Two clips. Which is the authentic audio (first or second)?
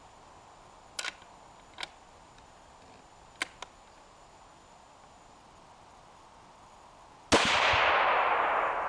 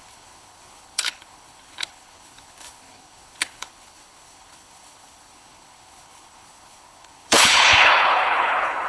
first